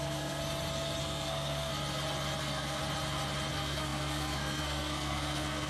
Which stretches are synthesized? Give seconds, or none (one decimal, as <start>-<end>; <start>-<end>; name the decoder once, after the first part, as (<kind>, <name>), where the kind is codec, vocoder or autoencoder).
0.0-0.4 (codec, SNAC); 1.0-1.7; 2.4-2.8; 3.5-5.7